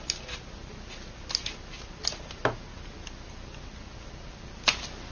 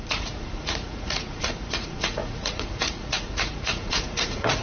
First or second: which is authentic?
first